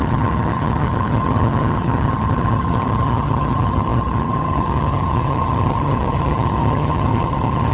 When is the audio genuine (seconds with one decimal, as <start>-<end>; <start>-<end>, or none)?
none